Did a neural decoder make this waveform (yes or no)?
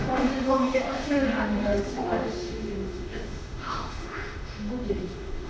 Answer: yes